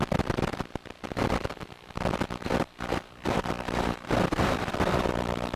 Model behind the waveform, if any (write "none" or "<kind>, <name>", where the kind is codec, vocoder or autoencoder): vocoder, BigVGAN v2